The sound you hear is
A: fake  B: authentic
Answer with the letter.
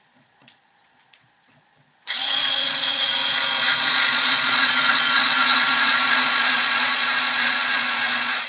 A